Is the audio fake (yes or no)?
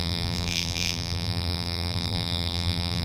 yes